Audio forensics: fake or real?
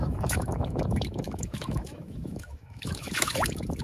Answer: fake